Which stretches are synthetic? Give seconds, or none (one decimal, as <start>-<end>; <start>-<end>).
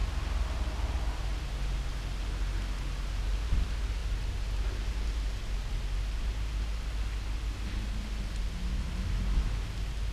none